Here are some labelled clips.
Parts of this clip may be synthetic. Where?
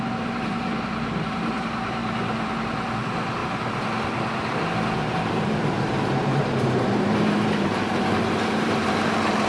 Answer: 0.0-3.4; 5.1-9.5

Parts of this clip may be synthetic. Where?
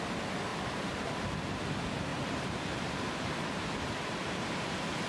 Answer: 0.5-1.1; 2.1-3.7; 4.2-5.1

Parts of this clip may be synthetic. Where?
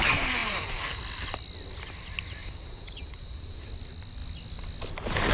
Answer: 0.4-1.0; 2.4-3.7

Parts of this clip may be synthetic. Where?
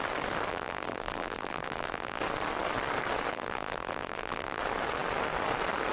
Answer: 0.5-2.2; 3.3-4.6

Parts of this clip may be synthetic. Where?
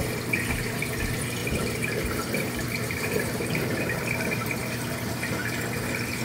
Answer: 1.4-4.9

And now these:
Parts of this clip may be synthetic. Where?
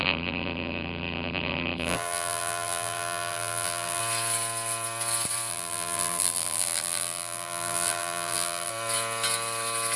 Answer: 0.0-4.0; 5.5-8.7